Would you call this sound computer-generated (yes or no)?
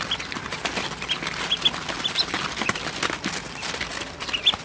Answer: no